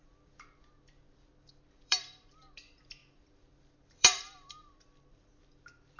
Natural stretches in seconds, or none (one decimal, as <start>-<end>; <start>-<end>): none